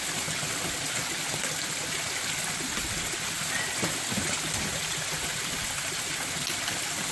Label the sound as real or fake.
real